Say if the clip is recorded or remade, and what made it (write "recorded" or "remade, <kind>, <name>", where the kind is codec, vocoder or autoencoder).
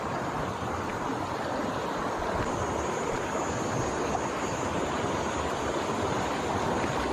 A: recorded